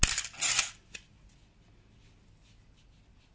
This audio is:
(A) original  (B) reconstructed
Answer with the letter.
A